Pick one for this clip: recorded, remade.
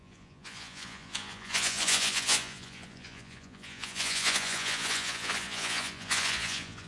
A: remade